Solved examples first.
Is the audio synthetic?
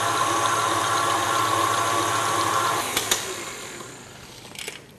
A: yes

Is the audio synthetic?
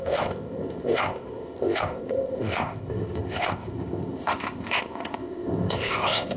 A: yes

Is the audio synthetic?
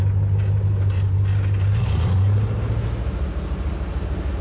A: no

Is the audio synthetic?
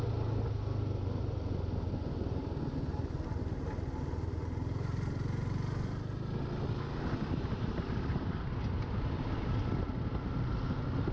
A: no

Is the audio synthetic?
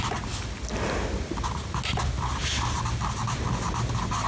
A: no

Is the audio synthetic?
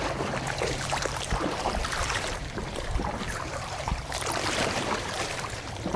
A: yes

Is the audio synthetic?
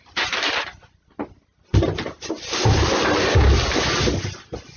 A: no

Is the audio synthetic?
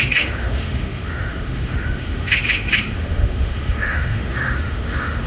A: yes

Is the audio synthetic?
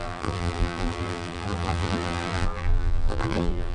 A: yes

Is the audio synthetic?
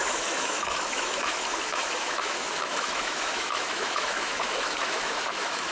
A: yes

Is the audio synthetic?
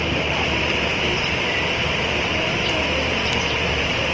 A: yes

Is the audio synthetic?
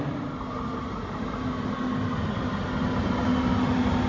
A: no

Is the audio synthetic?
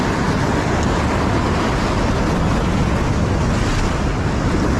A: no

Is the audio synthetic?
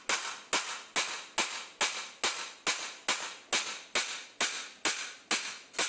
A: no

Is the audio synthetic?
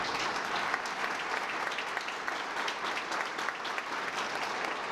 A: no